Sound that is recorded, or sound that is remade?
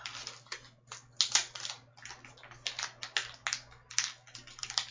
recorded